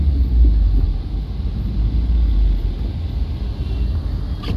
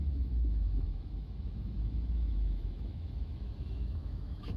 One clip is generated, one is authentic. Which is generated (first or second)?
second